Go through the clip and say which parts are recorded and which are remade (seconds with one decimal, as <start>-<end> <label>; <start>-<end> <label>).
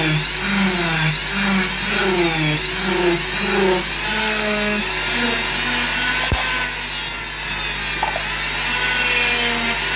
0.0-4.2 recorded; 4.2-4.8 remade; 4.8-10.0 recorded